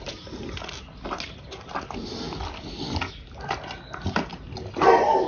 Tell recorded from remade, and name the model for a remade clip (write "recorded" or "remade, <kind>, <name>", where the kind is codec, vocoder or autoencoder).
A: recorded